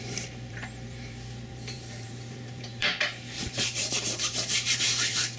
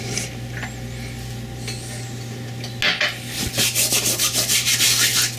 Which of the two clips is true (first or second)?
second